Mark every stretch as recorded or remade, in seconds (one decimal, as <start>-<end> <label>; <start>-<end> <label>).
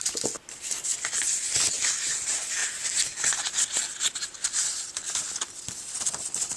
0.0-6.6 recorded